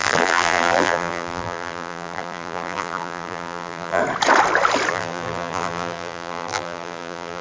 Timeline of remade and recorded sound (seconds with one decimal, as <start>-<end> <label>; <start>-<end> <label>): 0.0-4.0 remade; 4.0-4.9 recorded; 4.9-7.4 remade